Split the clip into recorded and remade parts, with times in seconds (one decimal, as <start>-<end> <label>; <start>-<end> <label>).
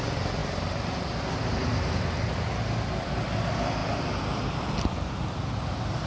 0.0-6.1 recorded